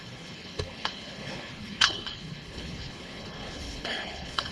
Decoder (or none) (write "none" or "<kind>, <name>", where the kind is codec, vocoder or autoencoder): codec, HILCodec